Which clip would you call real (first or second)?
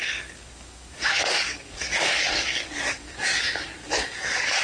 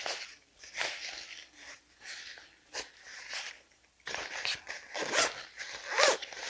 second